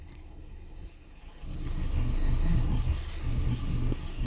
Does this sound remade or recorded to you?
remade